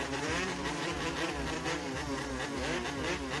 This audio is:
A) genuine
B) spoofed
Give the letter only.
B